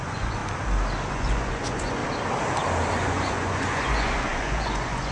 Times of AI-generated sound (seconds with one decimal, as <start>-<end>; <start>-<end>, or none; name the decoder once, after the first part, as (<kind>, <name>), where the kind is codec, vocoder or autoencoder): 0.0-0.4 (vocoder, Vocos); 1.1-2.0; 2.9-5.1